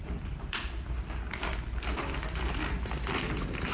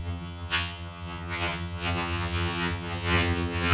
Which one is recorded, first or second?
first